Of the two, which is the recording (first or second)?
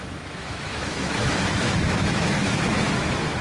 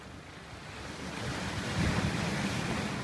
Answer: second